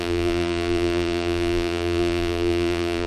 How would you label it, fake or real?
fake